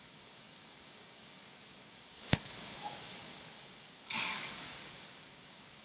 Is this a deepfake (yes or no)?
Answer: yes